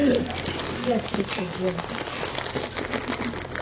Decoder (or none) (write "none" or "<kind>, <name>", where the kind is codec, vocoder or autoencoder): none